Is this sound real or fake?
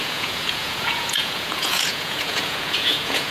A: fake